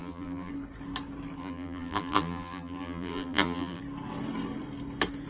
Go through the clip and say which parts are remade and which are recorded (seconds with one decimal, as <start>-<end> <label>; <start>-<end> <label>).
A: 0.0-0.5 remade; 0.5-1.4 recorded; 1.4-3.8 remade; 3.8-5.3 recorded